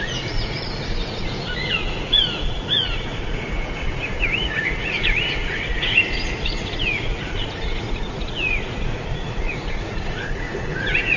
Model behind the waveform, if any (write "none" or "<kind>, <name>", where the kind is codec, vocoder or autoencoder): vocoder, Vocos